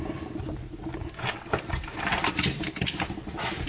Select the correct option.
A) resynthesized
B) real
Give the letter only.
B